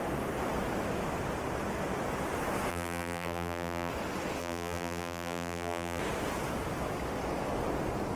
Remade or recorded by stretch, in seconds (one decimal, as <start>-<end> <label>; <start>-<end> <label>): 0.0-2.7 recorded; 2.7-3.9 remade; 3.9-4.4 recorded; 4.4-6.0 remade; 6.0-8.2 recorded

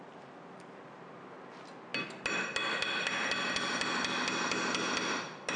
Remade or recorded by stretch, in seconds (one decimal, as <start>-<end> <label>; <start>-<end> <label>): 0.0-5.6 recorded

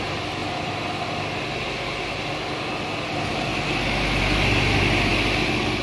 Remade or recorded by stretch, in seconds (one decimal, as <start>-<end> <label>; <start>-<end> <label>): 0.0-5.8 recorded

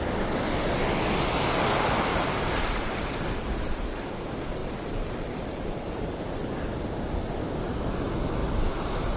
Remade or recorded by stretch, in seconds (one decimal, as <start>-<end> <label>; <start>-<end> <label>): 0.0-2.1 recorded; 2.1-3.0 remade; 3.0-4.6 recorded; 4.6-6.5 remade; 6.5-8.4 recorded; 8.4-9.2 remade

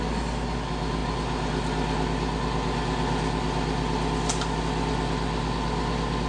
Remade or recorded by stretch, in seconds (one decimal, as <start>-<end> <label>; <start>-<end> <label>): 0.0-6.3 recorded